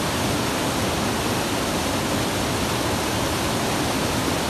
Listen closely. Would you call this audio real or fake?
real